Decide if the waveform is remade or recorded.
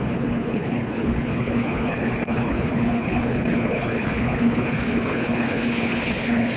remade